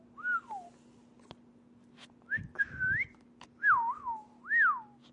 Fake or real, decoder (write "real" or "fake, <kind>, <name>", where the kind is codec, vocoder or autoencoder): real